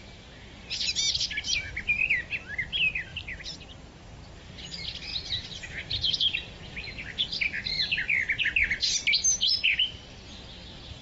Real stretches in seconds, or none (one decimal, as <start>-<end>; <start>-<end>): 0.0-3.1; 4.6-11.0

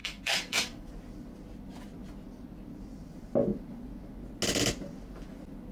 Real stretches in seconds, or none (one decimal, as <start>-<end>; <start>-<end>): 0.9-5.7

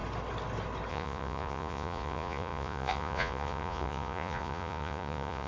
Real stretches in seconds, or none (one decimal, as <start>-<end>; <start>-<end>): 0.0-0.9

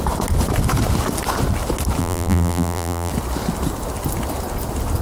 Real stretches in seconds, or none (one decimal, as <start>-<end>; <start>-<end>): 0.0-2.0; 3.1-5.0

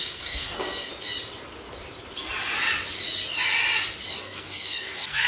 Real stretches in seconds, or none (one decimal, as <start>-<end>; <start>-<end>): 0.9-4.1

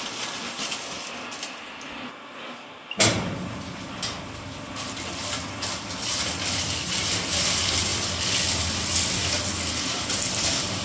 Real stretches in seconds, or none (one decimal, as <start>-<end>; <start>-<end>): 0.0-10.8

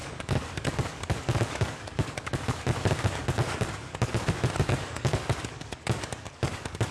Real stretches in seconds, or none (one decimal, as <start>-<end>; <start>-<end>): none

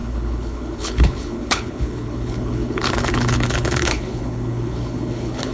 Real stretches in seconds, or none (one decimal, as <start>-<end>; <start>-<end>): none